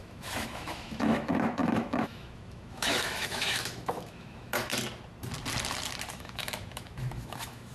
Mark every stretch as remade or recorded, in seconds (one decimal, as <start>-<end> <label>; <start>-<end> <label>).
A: 0.0-4.7 remade; 4.7-6.1 recorded; 6.1-7.7 remade